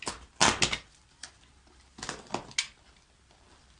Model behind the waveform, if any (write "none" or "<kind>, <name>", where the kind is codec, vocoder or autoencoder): none